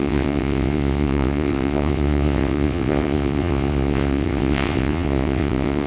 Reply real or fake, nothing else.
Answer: fake